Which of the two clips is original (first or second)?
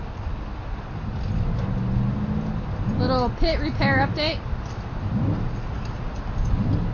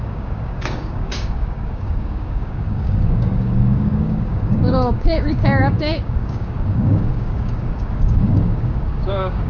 first